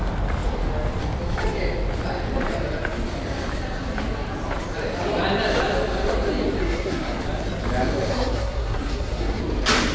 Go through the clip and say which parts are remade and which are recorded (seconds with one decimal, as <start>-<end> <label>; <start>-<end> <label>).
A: 0.0-6.6 recorded; 6.6-7.2 remade; 7.2-8.1 recorded; 8.1-9.4 remade; 9.4-9.9 recorded